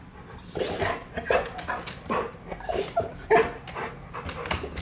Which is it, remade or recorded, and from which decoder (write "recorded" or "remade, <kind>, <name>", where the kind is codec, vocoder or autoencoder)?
recorded